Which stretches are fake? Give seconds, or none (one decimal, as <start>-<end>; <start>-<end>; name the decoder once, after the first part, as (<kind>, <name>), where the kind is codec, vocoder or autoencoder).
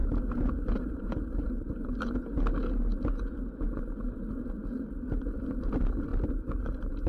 0.0-2.1 (vocoder, BigVGAN v2); 6.1-7.1